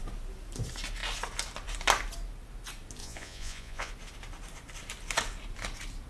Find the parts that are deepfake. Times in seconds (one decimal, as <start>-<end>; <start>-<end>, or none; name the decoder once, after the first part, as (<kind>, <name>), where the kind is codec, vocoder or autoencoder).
3.0-3.9 (vocoder, Vocos)